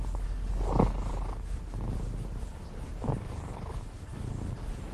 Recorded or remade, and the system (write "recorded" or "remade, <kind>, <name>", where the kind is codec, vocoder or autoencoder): recorded